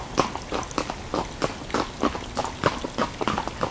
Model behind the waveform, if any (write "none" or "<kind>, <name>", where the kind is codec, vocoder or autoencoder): none